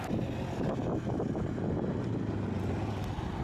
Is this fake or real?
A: real